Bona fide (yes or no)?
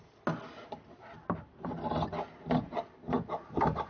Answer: yes